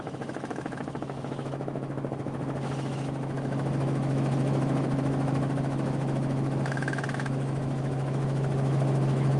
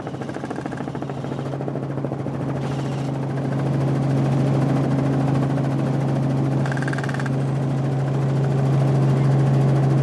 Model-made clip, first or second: first